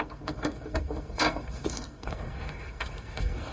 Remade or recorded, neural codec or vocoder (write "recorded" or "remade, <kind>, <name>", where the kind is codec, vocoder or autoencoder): remade, codec, SNAC